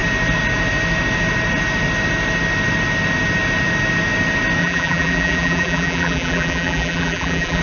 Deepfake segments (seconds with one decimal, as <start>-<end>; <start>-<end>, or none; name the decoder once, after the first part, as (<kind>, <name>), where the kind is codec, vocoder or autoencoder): 4.6-7.6 (vocoder, BigVGAN v2)